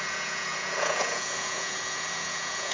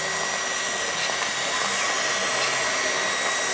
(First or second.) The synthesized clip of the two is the first